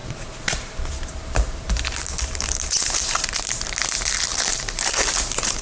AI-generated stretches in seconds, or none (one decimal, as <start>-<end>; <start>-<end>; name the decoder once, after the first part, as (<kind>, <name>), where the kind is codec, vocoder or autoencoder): 0.0-3.3 (vocoder, BigVGAN v2); 4.3-5.6